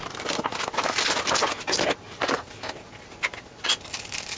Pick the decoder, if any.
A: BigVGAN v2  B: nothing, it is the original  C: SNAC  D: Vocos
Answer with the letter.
B